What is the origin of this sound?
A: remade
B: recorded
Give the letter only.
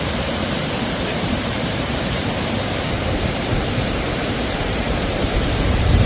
A